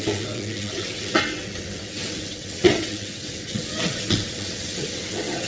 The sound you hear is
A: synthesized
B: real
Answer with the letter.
A